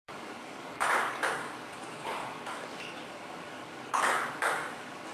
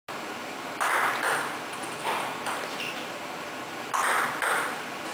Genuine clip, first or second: second